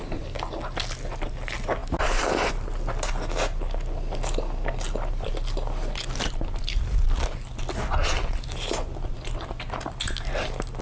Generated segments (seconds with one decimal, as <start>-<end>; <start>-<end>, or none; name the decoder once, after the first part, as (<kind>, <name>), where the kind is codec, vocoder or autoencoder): none